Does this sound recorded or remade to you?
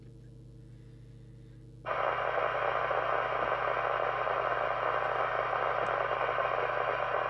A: recorded